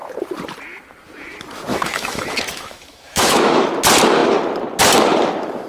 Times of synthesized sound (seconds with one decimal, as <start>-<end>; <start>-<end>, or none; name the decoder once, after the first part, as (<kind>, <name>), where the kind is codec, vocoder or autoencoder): 1.7-3.6 (autoencoder, DAC-VAE)